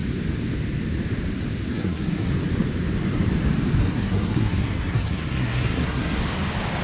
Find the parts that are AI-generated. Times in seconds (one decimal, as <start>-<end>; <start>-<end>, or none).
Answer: 1.7-2.3; 3.8-6.2